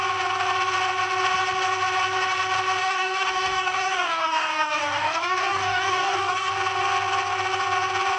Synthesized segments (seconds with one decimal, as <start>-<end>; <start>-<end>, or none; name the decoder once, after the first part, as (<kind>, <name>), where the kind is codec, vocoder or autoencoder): 2.8-6.5 (codec, DAC)